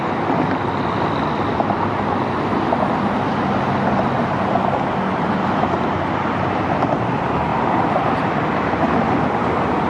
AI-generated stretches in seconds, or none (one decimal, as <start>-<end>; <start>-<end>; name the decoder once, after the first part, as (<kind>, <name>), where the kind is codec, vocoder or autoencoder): 7.5-9.9 (vocoder, BigVGAN v2)